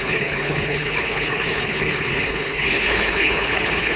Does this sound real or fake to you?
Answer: fake